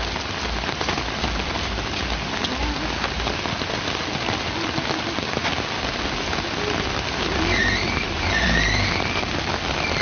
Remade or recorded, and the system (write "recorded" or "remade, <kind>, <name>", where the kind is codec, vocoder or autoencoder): recorded